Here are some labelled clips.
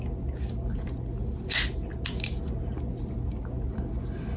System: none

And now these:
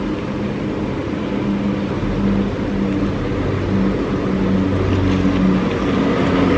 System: none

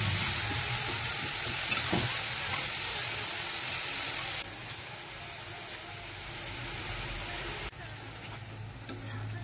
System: none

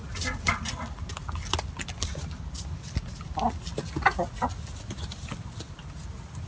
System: none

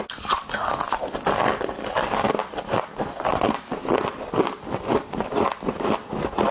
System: none